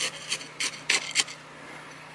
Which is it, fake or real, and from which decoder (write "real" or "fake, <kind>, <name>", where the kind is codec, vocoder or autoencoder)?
real